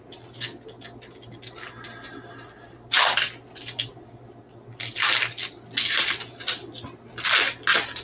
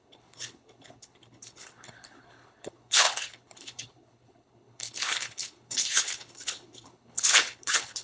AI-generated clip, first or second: second